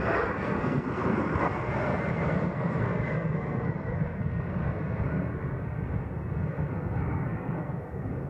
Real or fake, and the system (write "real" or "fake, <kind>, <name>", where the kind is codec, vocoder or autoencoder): fake, codec, SNAC